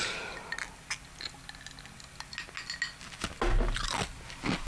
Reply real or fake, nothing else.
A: real